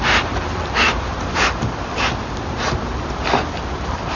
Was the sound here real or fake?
real